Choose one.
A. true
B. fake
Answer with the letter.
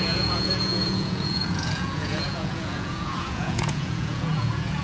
B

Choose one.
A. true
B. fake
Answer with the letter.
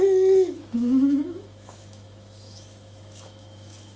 B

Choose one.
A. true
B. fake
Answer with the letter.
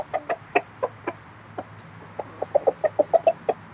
A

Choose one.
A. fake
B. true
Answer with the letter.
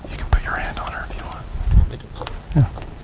B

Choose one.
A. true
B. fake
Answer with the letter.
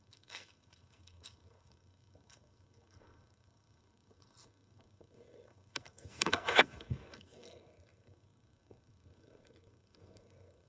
B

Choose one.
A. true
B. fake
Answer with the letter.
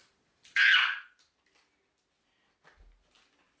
A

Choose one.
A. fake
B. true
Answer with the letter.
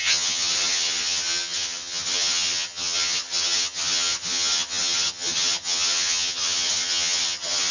A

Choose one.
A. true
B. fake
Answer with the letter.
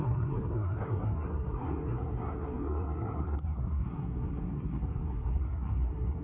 B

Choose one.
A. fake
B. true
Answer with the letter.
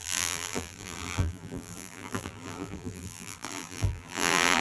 A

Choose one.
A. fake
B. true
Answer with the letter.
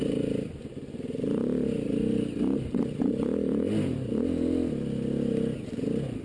B